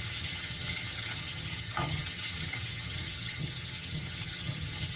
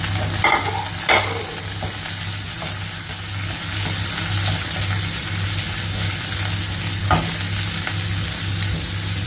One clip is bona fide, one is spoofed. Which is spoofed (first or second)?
first